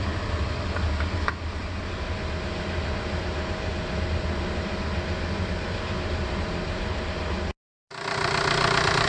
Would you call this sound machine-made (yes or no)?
no